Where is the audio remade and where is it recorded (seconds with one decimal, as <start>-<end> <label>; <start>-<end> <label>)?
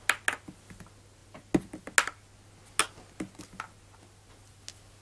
0.0-5.0 recorded